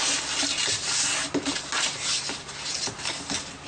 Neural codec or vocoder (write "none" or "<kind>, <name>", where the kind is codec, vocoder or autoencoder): none